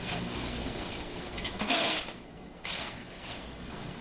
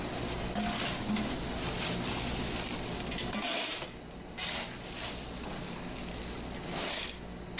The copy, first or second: first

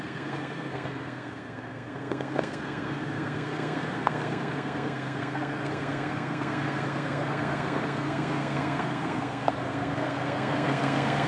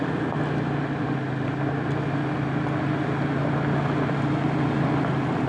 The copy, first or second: first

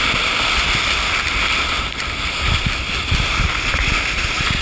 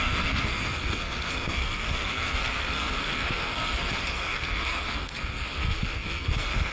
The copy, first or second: second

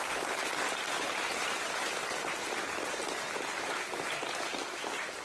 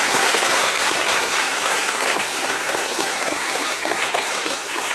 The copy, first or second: second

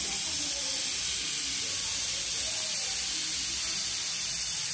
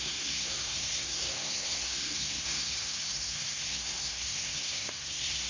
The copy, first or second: second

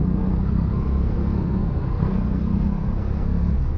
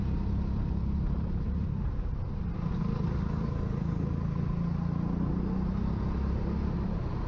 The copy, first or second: first